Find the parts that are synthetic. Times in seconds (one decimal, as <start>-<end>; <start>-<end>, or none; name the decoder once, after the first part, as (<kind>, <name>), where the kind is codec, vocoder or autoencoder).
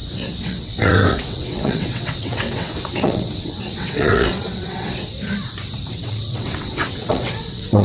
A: 0.0-4.9 (vocoder, WaveNeXt); 5.9-7.8